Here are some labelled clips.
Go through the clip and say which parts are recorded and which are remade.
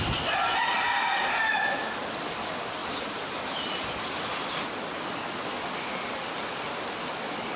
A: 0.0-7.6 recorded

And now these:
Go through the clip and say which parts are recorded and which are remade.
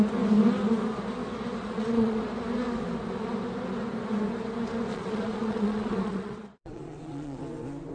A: 0.0-1.6 recorded; 1.6-2.2 remade; 2.2-4.9 recorded; 4.9-7.4 remade; 7.4-7.9 recorded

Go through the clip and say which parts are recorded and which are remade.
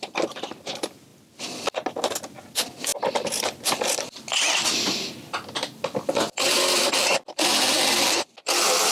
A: 0.0-8.9 recorded